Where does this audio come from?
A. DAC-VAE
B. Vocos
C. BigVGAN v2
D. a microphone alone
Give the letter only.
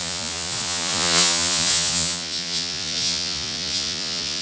B